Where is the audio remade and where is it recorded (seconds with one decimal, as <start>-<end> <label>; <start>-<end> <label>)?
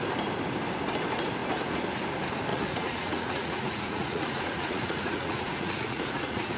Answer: 0.0-2.5 recorded; 2.5-6.6 remade